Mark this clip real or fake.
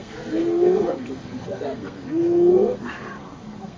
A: fake